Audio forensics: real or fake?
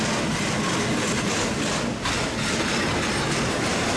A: real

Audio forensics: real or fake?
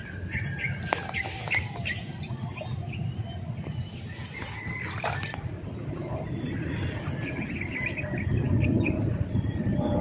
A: real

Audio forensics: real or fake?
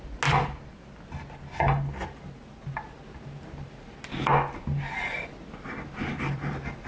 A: real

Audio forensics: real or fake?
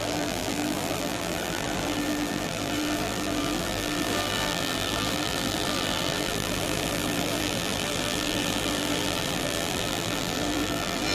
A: fake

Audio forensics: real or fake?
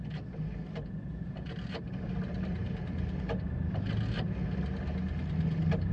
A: real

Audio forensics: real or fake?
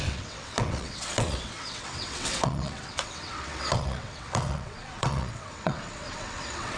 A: fake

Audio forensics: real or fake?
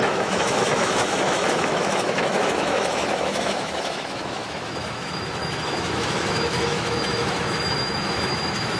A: fake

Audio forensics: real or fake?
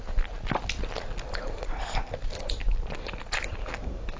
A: real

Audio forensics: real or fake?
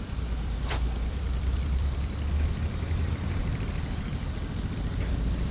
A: fake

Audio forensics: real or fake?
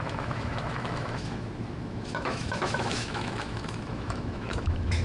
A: fake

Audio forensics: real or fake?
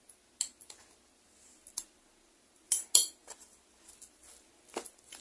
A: real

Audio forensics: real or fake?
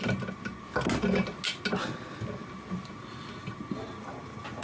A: real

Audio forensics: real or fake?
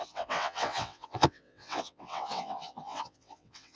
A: fake